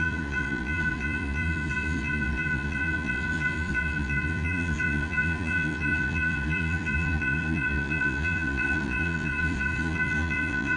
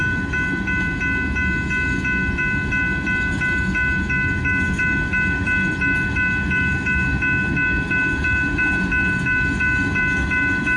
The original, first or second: second